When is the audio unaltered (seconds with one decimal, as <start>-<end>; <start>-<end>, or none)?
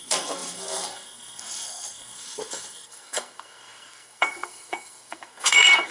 none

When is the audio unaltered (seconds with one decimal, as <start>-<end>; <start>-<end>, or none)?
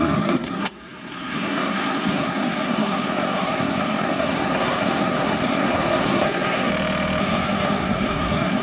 6.7-7.2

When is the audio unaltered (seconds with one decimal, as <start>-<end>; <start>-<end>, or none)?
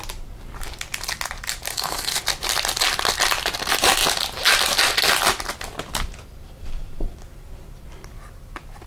0.0-1.7; 2.2-8.9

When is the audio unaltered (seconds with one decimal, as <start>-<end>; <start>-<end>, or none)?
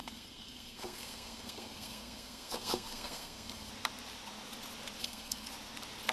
3.7-5.0; 5.5-6.1